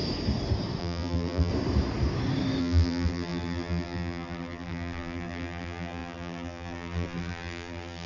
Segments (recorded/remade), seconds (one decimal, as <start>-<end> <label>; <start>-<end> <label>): 0.0-0.8 recorded; 0.8-1.5 remade; 1.5-2.6 recorded; 2.6-8.1 remade